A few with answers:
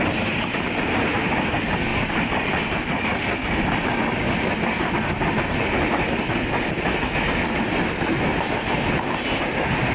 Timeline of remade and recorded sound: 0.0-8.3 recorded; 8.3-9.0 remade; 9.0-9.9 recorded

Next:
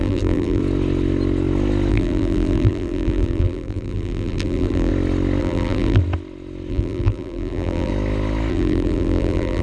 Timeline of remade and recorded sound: 0.0-0.6 remade; 0.6-1.9 recorded; 1.9-4.9 remade; 4.9-5.4 recorded; 5.4-6.0 remade; 6.0-6.7 recorded; 6.7-7.9 remade; 7.9-8.5 recorded; 8.5-9.6 remade

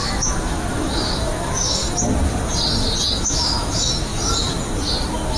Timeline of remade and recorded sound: 0.0-1.8 remade; 1.8-3.2 recorded; 3.2-4.1 remade; 4.1-5.4 recorded